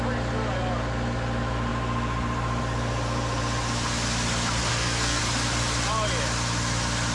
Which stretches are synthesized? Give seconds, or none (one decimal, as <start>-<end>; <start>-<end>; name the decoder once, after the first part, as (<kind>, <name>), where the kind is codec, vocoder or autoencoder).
4.7-5.2 (codec, SNAC)